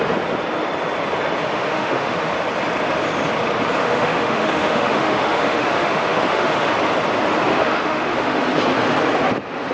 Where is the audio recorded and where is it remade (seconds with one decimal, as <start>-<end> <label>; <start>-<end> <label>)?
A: 0.0-1.4 recorded; 1.4-2.3 remade; 2.3-3.8 recorded; 3.8-6.7 remade; 6.7-7.5 recorded; 7.5-8.4 remade; 8.4-9.7 recorded